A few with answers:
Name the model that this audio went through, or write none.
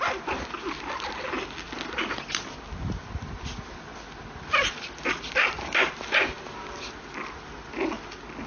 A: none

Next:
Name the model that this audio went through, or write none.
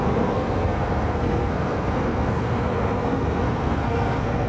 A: codec, SNAC